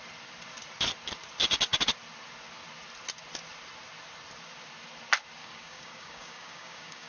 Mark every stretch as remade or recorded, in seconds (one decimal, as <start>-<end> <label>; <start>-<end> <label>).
0.0-5.4 recorded; 5.4-7.1 remade